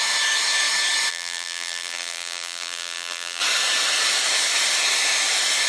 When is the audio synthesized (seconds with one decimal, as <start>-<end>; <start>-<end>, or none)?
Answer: 1.1-3.4